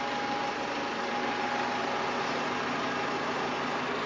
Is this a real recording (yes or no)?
yes